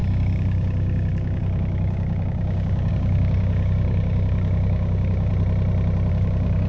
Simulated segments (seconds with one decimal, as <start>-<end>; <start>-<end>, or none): 0.0-5.3; 6.1-6.7